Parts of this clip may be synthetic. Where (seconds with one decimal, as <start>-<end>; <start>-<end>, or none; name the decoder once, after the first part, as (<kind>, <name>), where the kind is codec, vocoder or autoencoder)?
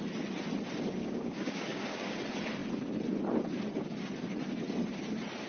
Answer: 1.0-2.2 (codec, DAC)